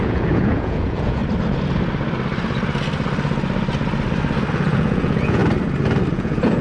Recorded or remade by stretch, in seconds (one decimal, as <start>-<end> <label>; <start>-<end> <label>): 0.0-1.2 remade; 1.2-4.5 recorded; 4.5-5.4 remade; 5.4-6.1 recorded; 6.1-6.6 remade

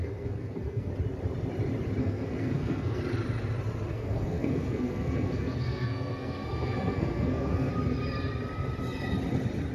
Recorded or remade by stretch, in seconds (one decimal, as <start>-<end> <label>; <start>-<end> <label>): 0.0-0.9 remade; 0.9-2.0 recorded; 2.0-3.0 remade; 3.0-3.9 recorded; 3.9-7.7 remade; 7.7-9.7 recorded

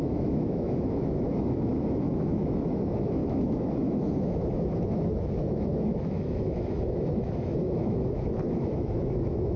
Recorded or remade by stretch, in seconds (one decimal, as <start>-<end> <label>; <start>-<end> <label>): 0.0-9.6 remade

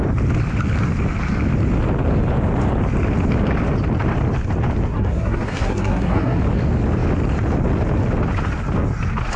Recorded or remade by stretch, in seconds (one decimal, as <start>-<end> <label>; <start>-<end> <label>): 0.0-4.9 recorded; 4.9-6.4 remade; 6.4-9.4 recorded

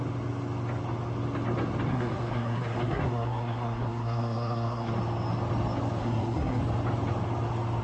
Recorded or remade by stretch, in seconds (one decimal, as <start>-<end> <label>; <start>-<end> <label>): 0.0-1.9 recorded; 1.9-4.9 remade; 4.9-6.0 recorded; 6.0-6.6 remade; 6.6-7.8 recorded

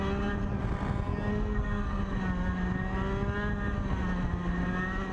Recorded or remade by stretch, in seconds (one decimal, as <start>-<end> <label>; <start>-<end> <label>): 0.0-1.3 recorded; 1.3-2.0 remade; 2.0-5.1 recorded

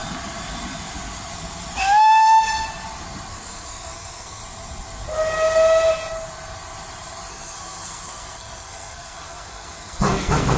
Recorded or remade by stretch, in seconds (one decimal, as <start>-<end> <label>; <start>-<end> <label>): 0.0-1.8 recorded; 1.8-2.5 remade; 2.5-3.3 recorded; 3.3-4.4 remade; 4.4-7.3 recorded; 7.3-10.6 remade